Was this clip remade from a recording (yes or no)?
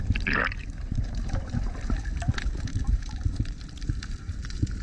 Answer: yes